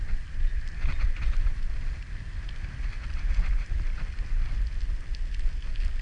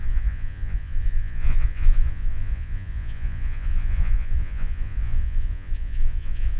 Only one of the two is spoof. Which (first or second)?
second